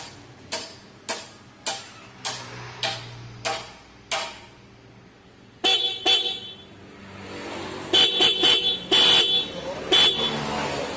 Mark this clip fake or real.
real